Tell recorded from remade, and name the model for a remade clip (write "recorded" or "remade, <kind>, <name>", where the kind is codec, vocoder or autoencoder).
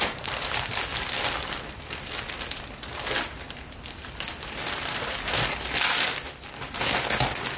recorded